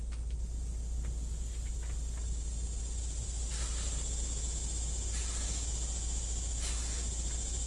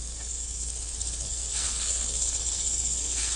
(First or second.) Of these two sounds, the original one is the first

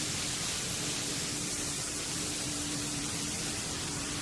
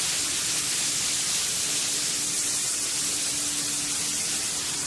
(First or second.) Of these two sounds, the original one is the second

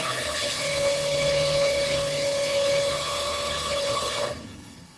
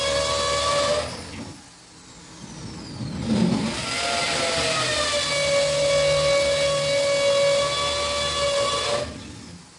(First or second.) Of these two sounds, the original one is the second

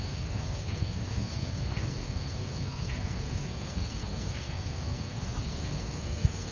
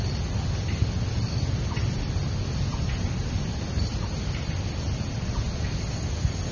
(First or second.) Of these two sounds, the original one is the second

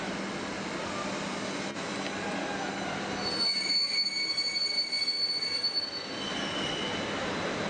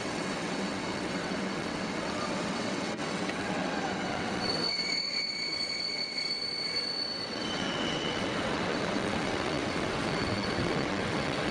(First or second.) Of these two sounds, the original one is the first